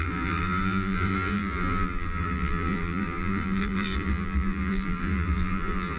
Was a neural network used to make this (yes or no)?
yes